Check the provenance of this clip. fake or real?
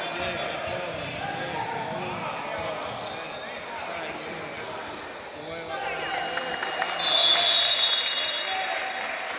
real